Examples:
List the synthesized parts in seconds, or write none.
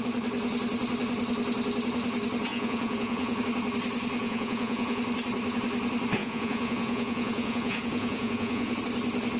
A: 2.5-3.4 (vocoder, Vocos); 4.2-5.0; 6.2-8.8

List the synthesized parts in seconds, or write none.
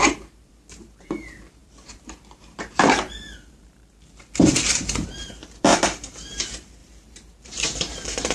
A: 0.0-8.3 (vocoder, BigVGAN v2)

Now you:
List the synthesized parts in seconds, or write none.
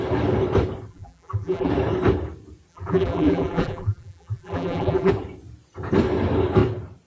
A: 0.9-1.7 (vocoder, BigVGAN v2); 2.7-5.1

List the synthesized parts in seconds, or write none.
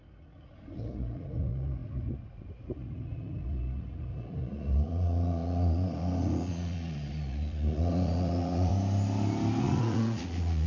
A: 0.0-8.7 (vocoder, Vocos); 9.6-10.7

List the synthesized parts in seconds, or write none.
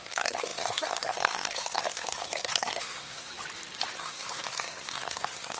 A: 0.0-3.3 (codec, SNAC); 4.0-5.6